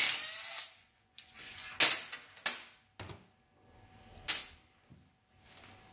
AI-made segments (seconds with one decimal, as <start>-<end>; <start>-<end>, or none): 0.8-1.7